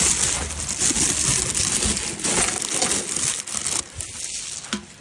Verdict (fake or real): real